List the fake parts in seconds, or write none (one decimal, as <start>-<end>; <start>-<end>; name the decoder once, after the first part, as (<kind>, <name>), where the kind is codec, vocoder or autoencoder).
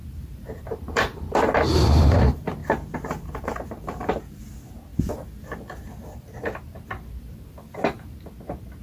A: 0.0-2.2 (vocoder, BigVGAN v2); 2.6-4.4